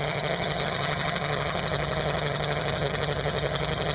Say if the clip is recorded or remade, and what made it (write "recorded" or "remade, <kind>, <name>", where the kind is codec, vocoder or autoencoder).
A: remade, vocoder, HiFi-GAN